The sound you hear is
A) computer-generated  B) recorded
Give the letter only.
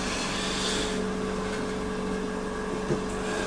B